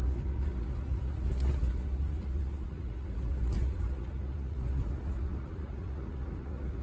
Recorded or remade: remade